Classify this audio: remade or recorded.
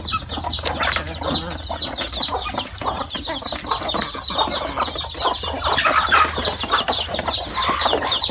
recorded